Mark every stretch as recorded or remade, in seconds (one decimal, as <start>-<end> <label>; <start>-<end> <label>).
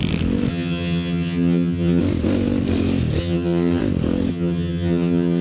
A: 0.0-0.5 recorded; 0.5-2.0 remade; 2.0-3.2 recorded; 3.2-3.8 remade; 3.8-4.3 recorded; 4.3-5.4 remade